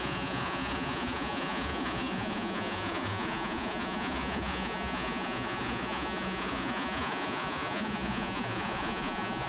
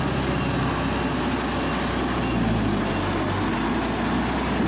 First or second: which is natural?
second